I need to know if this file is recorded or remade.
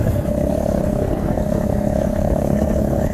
remade